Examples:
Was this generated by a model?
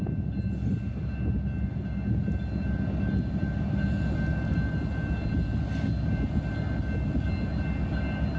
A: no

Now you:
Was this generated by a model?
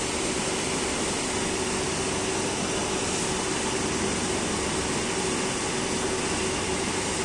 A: no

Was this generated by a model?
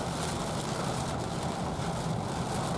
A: no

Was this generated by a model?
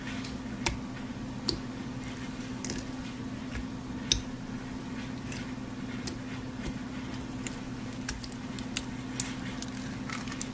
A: no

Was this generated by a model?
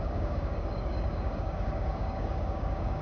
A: yes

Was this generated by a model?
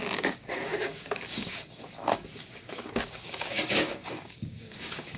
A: yes